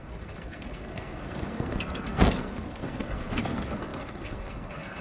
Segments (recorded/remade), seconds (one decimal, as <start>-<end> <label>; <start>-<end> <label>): 0.0-5.0 remade